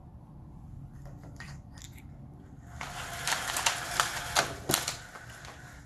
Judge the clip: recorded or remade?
recorded